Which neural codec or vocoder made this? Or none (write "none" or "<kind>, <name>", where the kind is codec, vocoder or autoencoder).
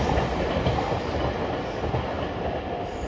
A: none